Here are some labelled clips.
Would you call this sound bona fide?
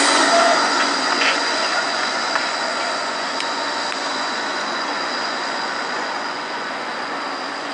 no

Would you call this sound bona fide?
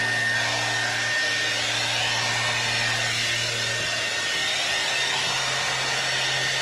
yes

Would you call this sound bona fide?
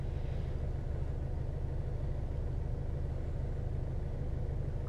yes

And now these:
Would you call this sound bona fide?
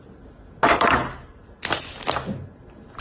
yes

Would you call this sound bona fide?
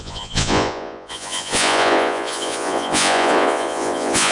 no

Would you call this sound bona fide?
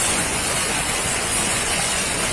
no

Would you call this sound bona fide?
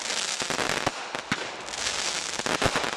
yes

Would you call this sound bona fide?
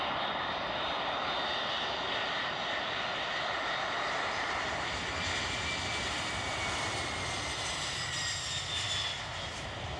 yes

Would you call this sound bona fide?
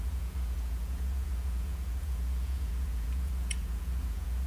no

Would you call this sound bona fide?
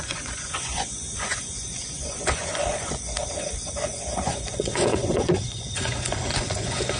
no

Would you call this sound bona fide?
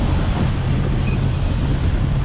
yes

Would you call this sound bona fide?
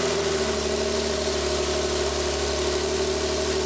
yes